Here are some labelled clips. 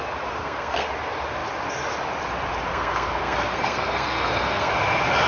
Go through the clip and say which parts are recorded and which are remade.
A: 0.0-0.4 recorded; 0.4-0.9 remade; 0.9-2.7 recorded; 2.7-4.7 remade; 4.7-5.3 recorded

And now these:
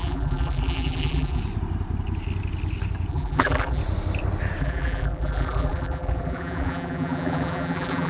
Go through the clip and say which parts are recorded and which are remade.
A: 0.0-1.4 remade; 1.4-3.1 recorded; 3.1-3.8 remade; 3.8-4.6 recorded; 4.6-8.1 remade

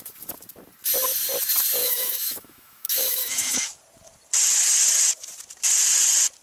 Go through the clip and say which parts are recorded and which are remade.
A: 0.0-1.8 recorded; 1.8-3.8 remade; 3.8-6.4 recorded